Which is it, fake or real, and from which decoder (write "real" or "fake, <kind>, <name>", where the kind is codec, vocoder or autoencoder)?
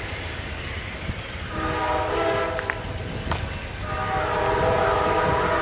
real